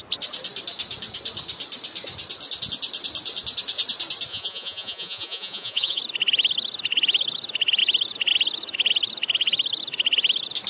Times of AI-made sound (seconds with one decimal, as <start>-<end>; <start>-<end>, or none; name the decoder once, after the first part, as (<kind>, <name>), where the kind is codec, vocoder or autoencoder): 4.3-6.0 (vocoder, Vocos)